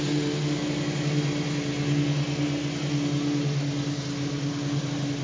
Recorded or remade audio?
recorded